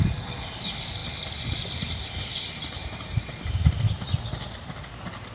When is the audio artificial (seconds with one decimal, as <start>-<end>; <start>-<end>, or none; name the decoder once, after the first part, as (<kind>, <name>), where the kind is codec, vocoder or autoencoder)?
none